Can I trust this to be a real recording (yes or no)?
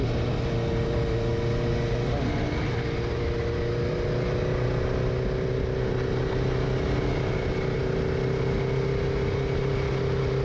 yes